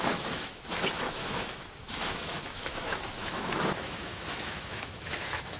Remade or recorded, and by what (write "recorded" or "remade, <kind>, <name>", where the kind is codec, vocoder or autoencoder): remade, autoencoder, DAC-VAE